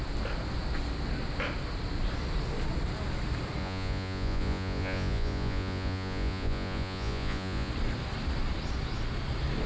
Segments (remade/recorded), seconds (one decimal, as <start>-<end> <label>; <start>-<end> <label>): 0.0-3.6 recorded; 3.6-7.7 remade; 7.7-9.7 recorded